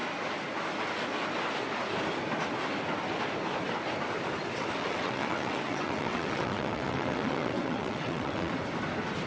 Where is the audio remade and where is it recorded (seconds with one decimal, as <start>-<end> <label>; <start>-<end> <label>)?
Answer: 0.0-4.8 recorded; 4.8-8.5 remade; 8.5-9.3 recorded